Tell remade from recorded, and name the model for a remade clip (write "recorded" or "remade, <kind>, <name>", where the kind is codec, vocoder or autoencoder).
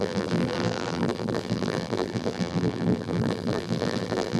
remade, vocoder, BigVGAN v2